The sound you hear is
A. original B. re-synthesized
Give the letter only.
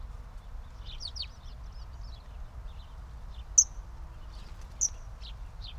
A